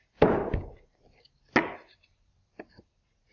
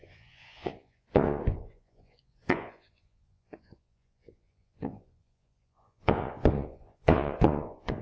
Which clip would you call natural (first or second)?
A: first